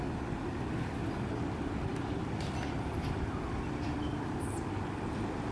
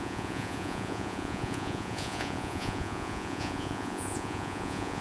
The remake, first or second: second